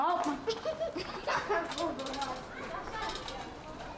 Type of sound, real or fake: real